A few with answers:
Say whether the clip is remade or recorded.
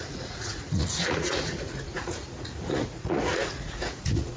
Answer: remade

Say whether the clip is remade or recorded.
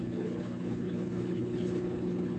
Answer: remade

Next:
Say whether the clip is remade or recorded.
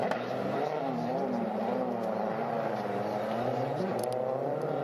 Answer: recorded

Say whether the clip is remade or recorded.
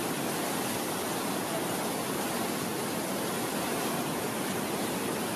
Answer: recorded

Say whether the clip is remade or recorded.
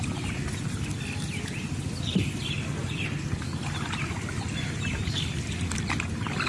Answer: recorded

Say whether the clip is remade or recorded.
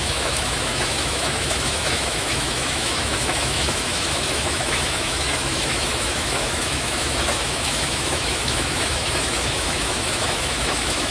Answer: remade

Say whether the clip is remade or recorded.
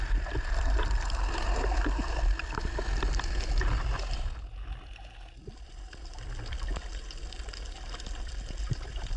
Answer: recorded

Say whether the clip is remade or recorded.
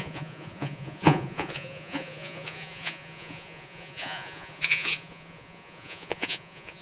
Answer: remade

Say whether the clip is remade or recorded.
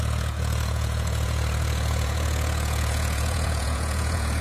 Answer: remade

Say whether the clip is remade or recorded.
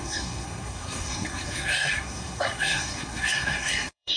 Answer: remade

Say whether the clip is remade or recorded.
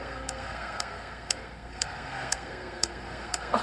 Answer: remade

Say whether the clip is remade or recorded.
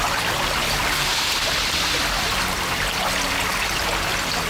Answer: recorded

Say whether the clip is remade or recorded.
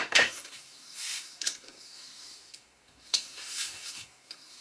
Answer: remade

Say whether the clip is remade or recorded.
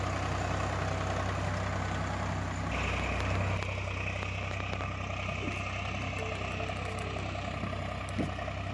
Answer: recorded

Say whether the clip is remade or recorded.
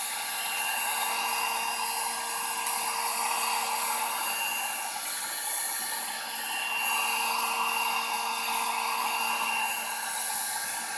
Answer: recorded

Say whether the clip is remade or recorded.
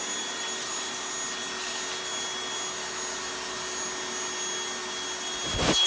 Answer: recorded